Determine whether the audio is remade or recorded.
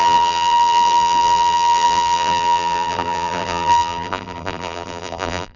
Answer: remade